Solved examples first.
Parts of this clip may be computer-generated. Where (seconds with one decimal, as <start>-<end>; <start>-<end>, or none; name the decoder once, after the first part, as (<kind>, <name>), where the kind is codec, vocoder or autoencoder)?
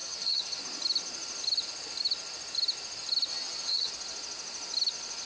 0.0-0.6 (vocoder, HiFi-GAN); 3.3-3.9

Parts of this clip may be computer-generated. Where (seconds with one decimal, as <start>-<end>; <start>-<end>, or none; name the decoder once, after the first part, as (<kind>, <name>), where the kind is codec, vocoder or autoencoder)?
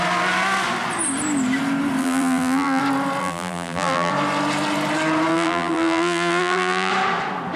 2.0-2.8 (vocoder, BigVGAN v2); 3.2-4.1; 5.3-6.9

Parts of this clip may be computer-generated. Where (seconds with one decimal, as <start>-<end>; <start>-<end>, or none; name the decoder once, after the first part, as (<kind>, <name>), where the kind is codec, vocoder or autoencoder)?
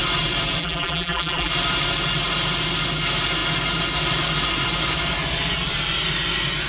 0.6-1.5 (vocoder, BigVGAN v2)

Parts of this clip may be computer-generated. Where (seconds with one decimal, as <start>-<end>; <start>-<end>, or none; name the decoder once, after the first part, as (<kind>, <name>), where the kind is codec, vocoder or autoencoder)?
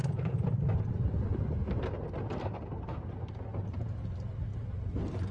0.0-0.9 (vocoder, BigVGAN v2); 4.5-5.3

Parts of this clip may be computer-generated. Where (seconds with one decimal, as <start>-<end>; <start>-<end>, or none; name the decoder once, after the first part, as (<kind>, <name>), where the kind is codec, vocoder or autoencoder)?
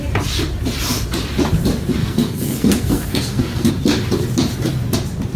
2.0-3.7 (codec, SNAC)